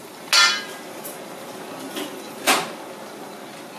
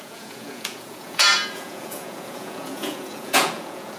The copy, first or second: second